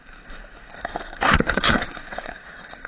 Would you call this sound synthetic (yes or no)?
yes